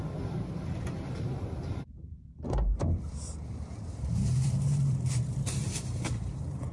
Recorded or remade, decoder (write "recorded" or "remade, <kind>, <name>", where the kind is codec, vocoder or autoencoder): remade, vocoder, BigVGAN v2